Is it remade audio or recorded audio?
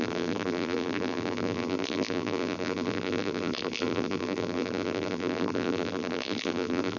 remade